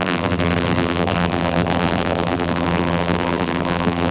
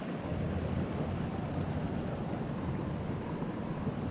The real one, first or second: second